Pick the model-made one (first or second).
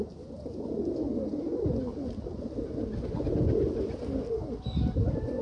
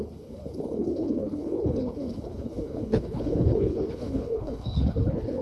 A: second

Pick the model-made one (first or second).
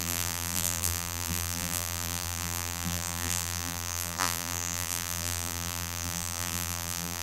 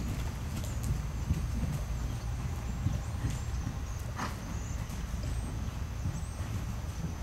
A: first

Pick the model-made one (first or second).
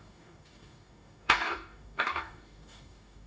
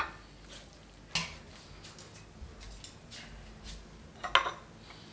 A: first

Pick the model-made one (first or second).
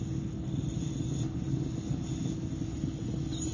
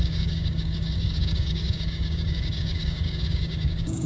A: second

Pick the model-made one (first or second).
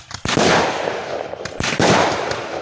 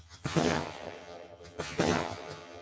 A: second